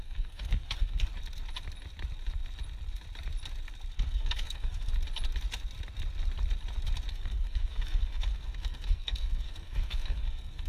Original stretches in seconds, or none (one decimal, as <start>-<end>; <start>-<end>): 1.1-3.9; 4.9-7.1